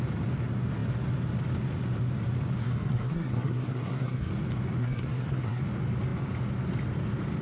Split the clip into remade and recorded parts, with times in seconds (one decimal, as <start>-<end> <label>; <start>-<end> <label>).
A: 0.0-2.6 recorded; 2.6-4.3 remade; 4.3-4.8 recorded; 4.8-5.6 remade; 5.6-7.4 recorded